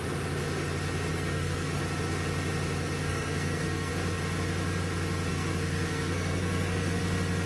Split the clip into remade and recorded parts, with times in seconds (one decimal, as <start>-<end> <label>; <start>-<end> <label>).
0.0-1.1 recorded; 1.1-1.8 remade; 1.8-3.0 recorded; 3.0-3.9 remade; 3.9-5.3 recorded; 5.3-7.0 remade; 7.0-7.5 recorded